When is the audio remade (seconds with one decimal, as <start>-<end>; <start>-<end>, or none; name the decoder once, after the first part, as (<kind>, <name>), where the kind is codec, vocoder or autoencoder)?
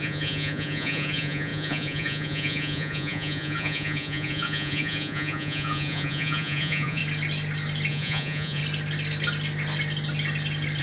0.0-7.0 (vocoder, Vocos); 7.9-8.6